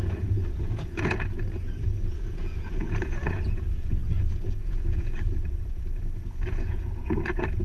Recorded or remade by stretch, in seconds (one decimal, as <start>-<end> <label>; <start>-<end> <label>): 0.0-7.6 remade